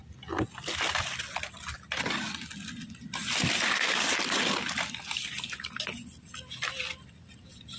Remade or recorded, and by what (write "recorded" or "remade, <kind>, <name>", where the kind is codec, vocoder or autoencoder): recorded